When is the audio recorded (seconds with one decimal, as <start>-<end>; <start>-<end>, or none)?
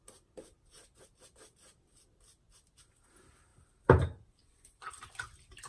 0.0-4.4; 5.0-5.7